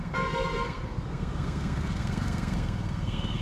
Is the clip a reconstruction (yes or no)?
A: yes